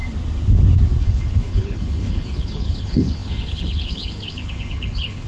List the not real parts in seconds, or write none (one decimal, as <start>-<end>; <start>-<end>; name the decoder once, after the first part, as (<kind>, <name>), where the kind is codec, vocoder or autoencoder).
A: 1.0-5.3 (codec, HILCodec)